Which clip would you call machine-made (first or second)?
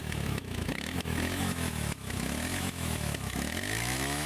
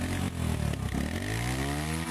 first